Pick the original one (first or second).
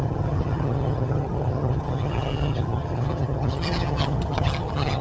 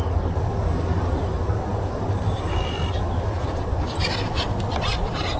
second